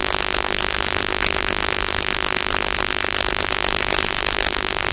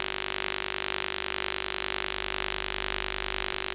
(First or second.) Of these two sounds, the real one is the second